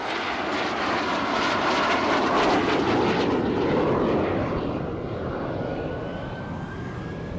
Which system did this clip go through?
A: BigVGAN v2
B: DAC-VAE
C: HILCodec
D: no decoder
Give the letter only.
D